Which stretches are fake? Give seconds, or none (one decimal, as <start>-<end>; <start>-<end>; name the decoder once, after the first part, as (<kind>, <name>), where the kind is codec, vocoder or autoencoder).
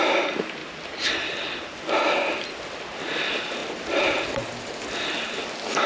3.6-4.2 (vocoder, BigVGAN v2)